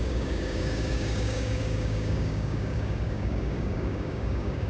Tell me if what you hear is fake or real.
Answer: fake